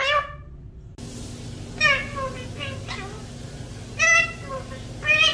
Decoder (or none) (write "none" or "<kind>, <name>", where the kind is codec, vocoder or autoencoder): none